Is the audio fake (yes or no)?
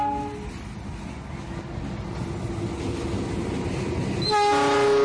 no